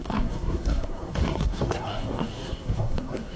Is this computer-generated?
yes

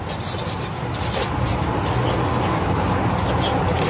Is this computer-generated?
no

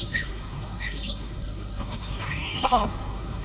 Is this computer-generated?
yes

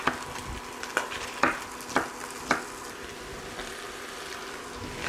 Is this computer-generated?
no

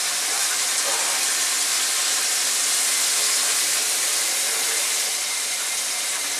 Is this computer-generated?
no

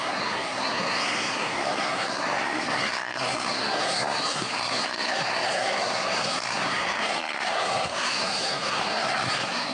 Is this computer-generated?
yes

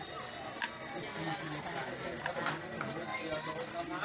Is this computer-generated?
no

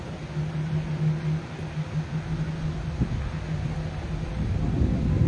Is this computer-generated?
no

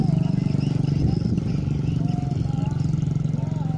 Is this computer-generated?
no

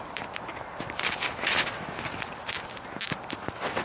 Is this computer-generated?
no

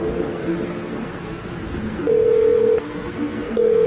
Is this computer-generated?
yes